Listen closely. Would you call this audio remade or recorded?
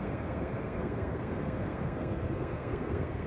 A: remade